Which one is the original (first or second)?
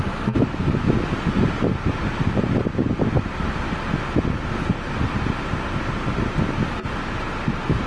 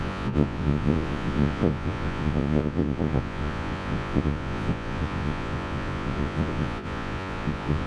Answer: first